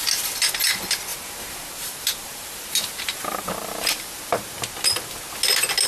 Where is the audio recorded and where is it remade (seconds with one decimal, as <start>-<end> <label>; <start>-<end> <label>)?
0.0-1.1 recorded; 1.1-4.6 remade; 4.6-5.9 recorded